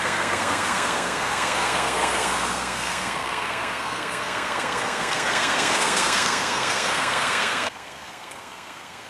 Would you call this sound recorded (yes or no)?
no